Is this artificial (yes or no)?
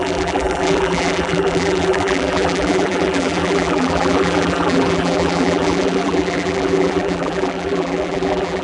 yes